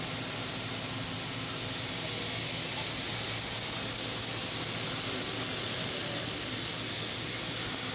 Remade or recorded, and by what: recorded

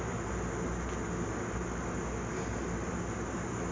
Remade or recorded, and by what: recorded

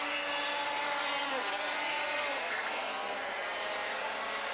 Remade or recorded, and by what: recorded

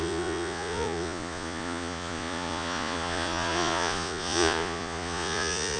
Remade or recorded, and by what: remade, vocoder, Vocos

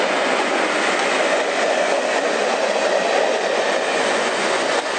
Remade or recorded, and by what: remade, vocoder, Vocos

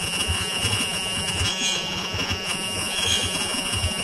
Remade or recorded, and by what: remade, vocoder, Vocos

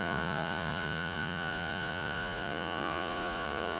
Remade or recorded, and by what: remade, vocoder, Vocos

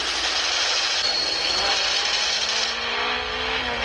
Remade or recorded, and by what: recorded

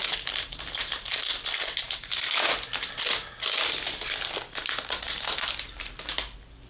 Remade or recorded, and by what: recorded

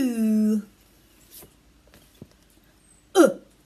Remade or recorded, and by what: recorded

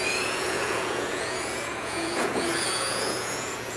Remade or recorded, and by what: remade, vocoder, Vocos